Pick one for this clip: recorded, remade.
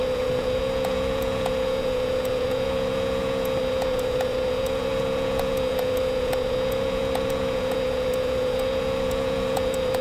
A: remade